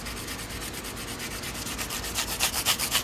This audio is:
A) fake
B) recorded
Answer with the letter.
B